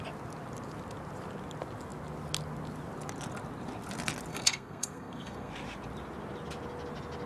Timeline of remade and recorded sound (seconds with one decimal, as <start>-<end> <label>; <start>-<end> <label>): 0.0-4.3 recorded; 4.3-5.5 remade; 5.5-7.3 recorded

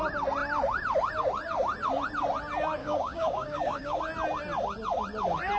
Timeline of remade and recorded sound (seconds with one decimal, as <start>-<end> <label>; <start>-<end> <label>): 0.0-2.8 recorded; 2.8-4.0 remade; 4.0-5.6 recorded

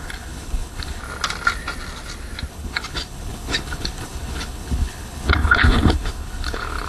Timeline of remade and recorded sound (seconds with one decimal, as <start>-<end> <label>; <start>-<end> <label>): 0.0-1.0 remade; 1.0-2.5 recorded; 2.5-6.9 remade

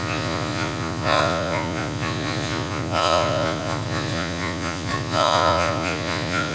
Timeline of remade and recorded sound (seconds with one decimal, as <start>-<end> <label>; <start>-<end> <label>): 0.0-6.5 remade

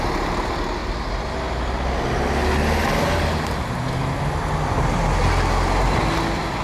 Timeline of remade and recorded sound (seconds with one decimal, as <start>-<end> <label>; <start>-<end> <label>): 0.0-6.6 recorded

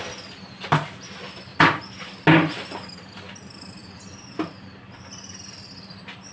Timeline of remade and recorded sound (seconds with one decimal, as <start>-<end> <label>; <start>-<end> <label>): 0.0-3.8 recorded; 3.8-5.0 remade; 5.0-6.3 recorded

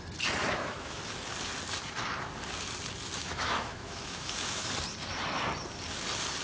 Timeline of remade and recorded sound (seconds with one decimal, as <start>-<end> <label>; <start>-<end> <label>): 0.0-0.4 recorded; 0.4-1.0 remade; 1.0-3.2 recorded; 3.2-4.7 remade; 4.7-6.4 recorded